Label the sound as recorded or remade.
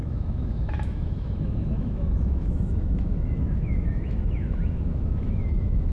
remade